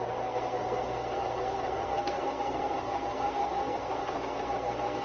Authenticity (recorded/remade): remade